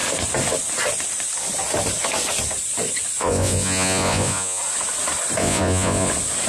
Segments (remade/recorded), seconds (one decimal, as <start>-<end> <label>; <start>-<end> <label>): 0.0-3.2 recorded; 3.2-4.6 remade; 4.6-5.4 recorded; 5.4-6.1 remade; 6.1-6.5 recorded